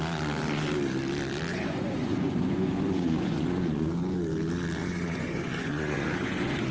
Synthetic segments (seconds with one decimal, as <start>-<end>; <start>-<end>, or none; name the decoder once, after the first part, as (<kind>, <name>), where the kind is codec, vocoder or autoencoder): 1.5-3.9 (vocoder, Vocos); 4.8-6.7